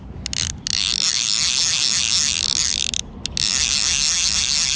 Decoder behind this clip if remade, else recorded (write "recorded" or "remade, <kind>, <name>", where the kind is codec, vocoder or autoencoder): recorded